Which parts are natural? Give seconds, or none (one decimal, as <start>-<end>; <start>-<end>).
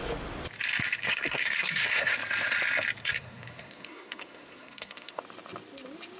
0.0-1.0; 2.1-3.0; 5.2-6.2